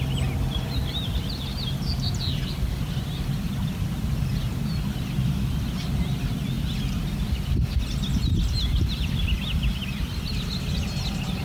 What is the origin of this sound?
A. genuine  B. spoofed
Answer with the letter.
A